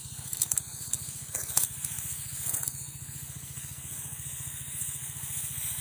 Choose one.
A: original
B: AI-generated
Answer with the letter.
B